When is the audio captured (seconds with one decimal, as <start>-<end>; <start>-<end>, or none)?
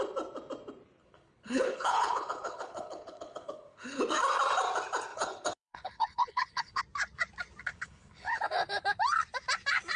0.0-1.0; 4.0-5.1; 6.8-7.7; 8.4-10.0